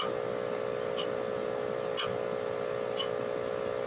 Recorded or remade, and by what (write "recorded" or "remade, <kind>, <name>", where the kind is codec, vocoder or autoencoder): recorded